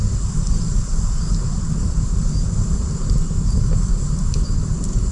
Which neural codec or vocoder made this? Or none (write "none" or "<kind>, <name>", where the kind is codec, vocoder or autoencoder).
none